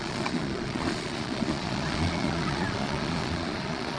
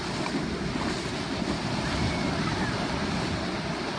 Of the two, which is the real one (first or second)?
second